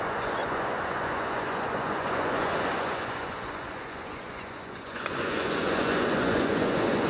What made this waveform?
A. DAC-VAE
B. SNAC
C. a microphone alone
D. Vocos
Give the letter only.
D